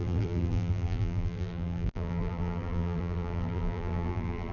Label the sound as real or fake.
fake